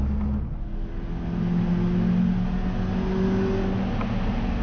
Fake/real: real